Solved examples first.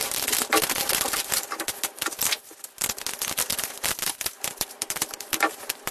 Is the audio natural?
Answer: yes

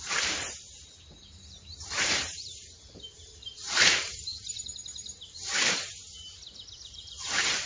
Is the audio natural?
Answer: no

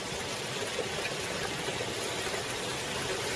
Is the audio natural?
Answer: yes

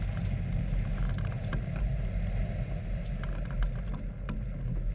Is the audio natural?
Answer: yes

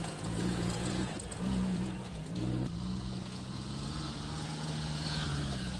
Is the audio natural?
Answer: no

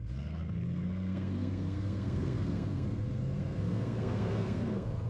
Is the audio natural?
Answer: no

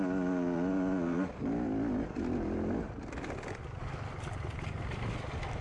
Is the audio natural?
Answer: yes